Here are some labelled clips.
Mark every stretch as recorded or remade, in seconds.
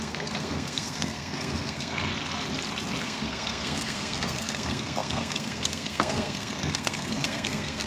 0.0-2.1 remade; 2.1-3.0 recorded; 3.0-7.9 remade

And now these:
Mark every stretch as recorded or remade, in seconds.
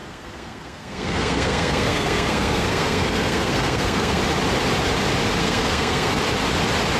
0.0-4.2 remade; 4.2-5.4 recorded; 5.4-6.2 remade; 6.2-7.0 recorded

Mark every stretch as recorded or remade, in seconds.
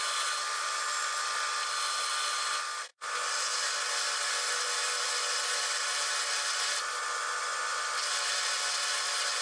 0.0-9.4 recorded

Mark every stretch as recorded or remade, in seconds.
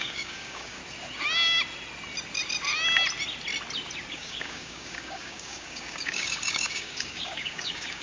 0.0-0.8 remade; 0.8-4.1 recorded; 4.1-8.0 remade